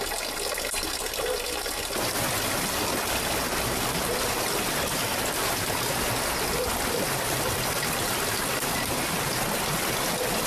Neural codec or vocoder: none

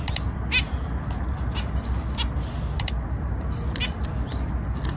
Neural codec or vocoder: none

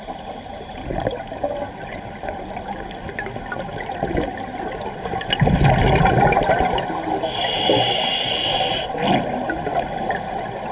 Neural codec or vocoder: none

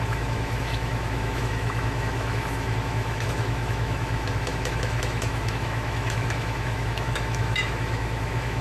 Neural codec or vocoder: autoencoder, DAC-VAE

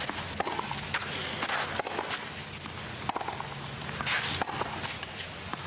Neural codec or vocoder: none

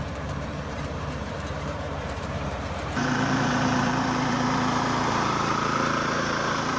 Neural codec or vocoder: vocoder, BigVGAN v2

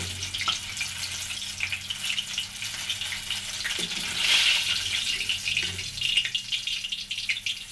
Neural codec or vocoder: none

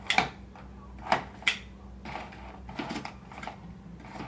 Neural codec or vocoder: none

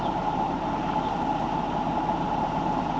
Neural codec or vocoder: none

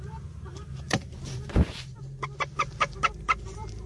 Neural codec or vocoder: vocoder, BigVGAN v2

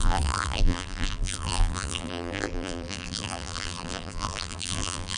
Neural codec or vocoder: vocoder, BigVGAN v2